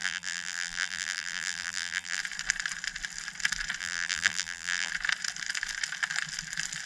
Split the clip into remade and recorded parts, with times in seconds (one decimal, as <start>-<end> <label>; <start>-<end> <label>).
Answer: 0.0-2.2 remade; 2.2-3.8 recorded; 3.8-4.9 remade; 4.9-6.9 recorded